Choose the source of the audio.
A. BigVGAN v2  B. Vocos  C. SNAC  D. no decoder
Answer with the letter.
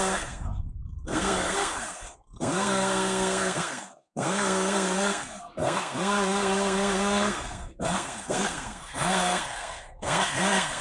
C